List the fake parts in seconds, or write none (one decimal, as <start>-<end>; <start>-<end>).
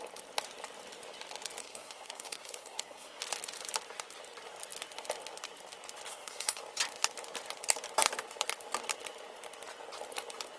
1.6-3.2; 6.1-6.6